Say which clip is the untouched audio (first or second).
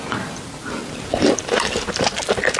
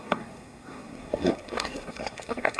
first